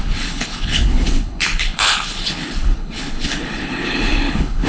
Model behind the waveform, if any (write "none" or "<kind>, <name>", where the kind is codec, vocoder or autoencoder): codec, HILCodec